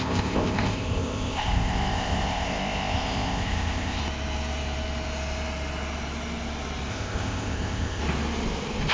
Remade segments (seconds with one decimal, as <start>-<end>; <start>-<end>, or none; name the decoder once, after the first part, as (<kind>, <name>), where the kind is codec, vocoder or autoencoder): 0.0-4.0 (codec, ZipCodec); 6.9-8.0